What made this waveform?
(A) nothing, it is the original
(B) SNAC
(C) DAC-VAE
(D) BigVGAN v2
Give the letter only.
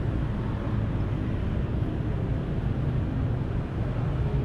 A